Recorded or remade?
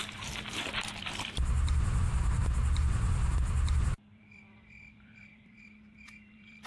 remade